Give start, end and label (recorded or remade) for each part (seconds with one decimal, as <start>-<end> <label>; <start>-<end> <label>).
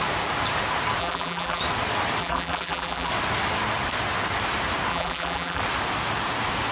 0.0-1.0 recorded; 1.0-1.6 remade; 1.6-2.2 recorded; 2.2-3.1 remade; 3.1-4.9 recorded; 4.9-5.6 remade; 5.6-6.7 recorded